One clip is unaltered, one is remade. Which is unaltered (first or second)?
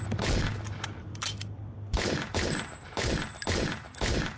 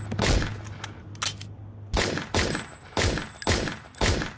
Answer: second